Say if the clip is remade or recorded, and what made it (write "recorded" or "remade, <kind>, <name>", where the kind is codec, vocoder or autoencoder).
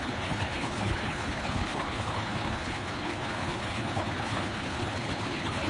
remade, codec, HILCodec